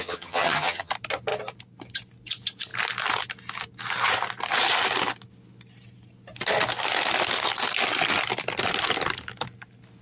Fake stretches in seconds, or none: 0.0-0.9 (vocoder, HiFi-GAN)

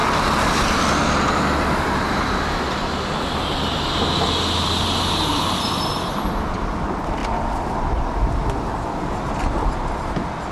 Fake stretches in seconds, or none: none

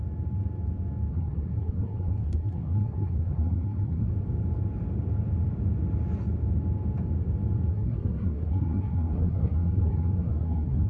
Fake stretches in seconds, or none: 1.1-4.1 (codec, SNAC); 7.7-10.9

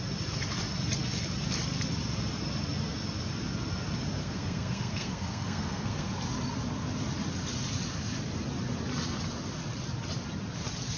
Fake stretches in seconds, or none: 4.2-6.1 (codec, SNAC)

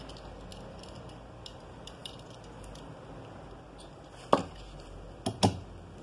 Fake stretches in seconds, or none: 2.0-2.9 (vocoder, BigVGAN v2)